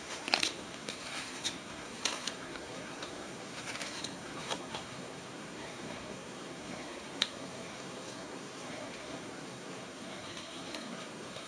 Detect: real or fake fake